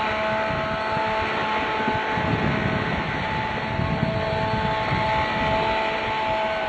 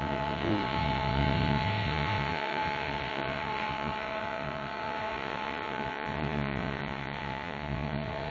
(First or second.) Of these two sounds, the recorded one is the first